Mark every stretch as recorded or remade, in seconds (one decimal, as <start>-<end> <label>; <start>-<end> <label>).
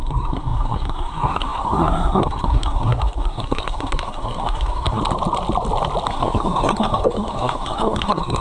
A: 0.0-5.0 remade; 5.0-6.1 recorded; 6.1-8.4 remade